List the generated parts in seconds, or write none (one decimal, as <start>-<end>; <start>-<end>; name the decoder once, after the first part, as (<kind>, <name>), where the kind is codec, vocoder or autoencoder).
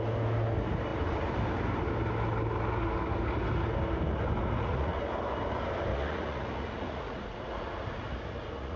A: 4.4-5.0 (vocoder, Vocos); 5.9-8.8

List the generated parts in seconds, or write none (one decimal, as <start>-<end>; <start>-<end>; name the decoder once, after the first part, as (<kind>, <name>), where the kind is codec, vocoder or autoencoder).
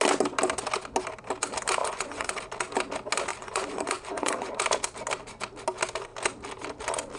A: 1.8-2.4 (vocoder, Vocos); 3.3-4.5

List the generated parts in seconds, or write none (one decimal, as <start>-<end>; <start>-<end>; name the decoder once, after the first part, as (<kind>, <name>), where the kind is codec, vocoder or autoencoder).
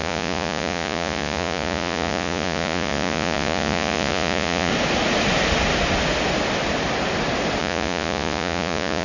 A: 0.0-4.7 (vocoder, Vocos); 7.6-9.0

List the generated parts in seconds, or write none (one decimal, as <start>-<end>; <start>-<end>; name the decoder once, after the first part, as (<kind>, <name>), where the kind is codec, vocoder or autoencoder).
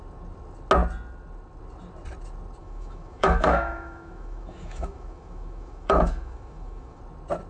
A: 2.6-7.0 (autoencoder, DAC-VAE)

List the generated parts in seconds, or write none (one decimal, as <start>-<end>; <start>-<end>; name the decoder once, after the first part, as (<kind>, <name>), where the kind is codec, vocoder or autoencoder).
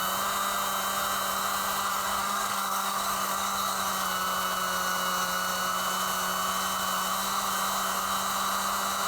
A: 1.9-3.9 (codec, DAC)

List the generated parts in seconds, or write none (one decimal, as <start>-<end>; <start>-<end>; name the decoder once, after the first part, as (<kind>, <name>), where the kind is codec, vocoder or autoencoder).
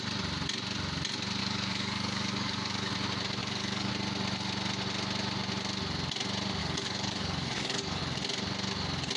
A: 1.4-2.9 (codec, DAC); 3.4-3.9; 6.6-8.0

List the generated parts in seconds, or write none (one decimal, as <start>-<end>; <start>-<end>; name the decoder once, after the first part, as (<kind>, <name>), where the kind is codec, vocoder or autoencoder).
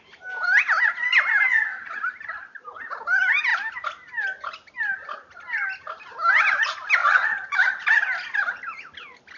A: 1.5-2.0 (vocoder, Vocos); 7.0-7.7